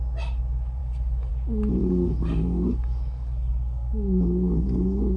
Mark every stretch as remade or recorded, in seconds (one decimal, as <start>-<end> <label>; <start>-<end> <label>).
0.0-0.8 recorded; 0.8-1.3 remade; 1.3-1.8 recorded; 1.8-5.2 remade